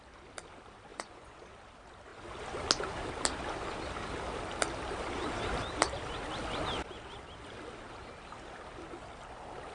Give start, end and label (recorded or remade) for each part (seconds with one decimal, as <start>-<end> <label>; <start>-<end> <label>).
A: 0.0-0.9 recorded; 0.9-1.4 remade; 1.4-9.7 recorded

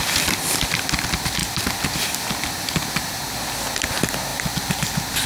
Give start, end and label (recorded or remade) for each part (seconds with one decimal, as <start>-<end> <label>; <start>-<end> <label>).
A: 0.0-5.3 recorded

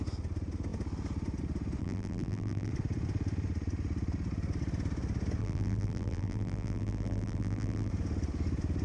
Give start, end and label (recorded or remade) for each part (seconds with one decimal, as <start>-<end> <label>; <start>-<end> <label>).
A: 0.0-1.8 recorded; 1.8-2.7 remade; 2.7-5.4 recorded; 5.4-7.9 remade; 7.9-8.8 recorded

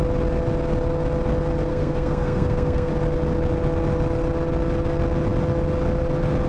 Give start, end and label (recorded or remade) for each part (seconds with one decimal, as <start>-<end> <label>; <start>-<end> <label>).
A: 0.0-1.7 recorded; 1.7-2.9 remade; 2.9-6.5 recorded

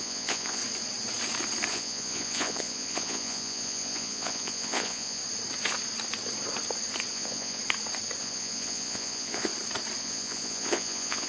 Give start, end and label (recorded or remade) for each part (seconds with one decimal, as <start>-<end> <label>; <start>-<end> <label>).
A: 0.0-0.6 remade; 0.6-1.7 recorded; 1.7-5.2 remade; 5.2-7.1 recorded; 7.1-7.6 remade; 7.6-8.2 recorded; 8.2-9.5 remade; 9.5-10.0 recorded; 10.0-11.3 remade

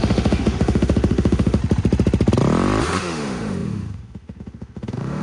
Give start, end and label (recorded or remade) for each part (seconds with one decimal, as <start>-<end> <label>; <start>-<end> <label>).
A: 0.0-1.6 remade; 1.6-2.8 recorded; 2.8-5.2 remade

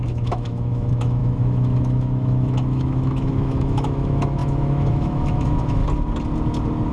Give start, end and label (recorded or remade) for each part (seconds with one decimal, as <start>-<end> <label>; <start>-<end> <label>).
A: 0.0-5.8 remade; 5.8-6.9 recorded

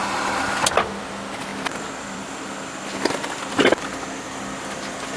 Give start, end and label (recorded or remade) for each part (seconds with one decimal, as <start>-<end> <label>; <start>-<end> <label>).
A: 0.0-1.0 recorded; 1.0-5.2 remade